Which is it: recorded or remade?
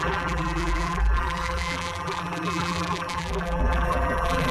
remade